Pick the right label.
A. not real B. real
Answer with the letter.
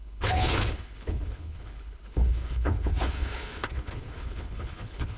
A